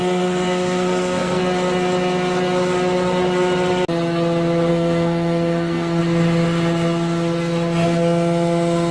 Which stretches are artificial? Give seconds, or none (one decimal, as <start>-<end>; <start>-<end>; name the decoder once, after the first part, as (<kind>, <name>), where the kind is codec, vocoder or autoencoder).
0.0-1.4 (codec, SNAC); 4.7-6.0